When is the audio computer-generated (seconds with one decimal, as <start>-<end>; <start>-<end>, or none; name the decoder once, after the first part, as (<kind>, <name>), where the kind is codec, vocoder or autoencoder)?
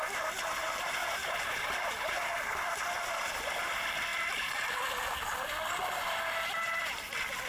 1.0-2.2 (vocoder, BigVGAN v2)